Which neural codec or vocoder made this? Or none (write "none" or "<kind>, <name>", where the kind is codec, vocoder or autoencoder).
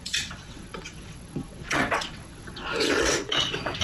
vocoder, WaveNeXt